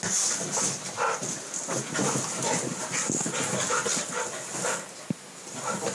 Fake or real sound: real